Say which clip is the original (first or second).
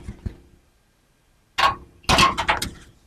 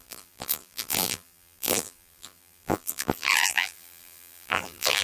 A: first